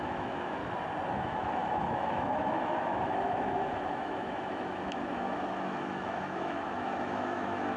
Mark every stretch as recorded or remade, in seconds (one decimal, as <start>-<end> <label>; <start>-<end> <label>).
0.0-0.6 remade; 0.6-1.1 recorded; 1.1-7.8 remade